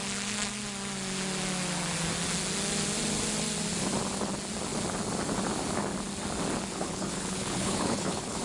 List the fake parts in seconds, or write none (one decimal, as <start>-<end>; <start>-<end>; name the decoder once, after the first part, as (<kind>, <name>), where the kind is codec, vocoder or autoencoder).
6.7-8.4 (codec, HILCodec)